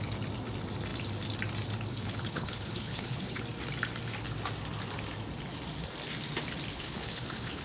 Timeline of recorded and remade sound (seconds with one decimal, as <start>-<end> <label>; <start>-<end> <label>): 0.0-1.9 recorded; 1.9-3.4 remade; 3.4-6.7 recorded; 6.7-7.6 remade